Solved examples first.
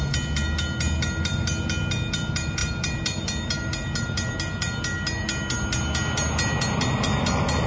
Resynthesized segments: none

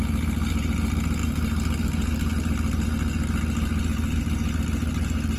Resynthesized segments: none

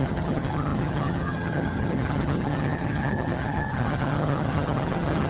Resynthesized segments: 0.0-5.3 (vocoder, HiFi-GAN)

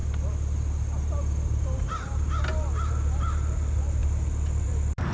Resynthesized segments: none

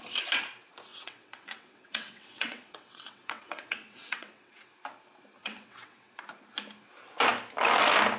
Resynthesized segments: 0.9-4.7 (vocoder, WaveNeXt); 5.4-6.2

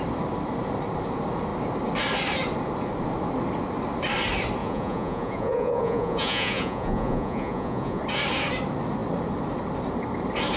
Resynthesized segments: 4.6-8.0 (vocoder, Vocos)